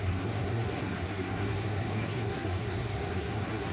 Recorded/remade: remade